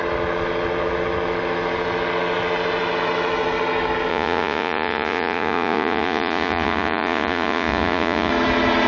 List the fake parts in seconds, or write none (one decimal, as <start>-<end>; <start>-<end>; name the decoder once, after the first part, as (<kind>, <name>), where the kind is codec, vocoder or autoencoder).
4.1-8.3 (vocoder, Vocos)